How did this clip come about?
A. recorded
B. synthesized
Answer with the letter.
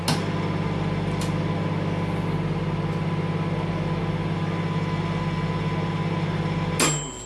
A